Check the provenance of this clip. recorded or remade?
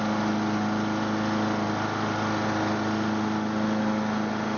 recorded